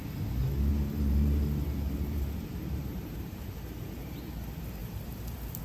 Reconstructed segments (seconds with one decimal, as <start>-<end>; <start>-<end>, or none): 0.7-4.1; 4.8-5.6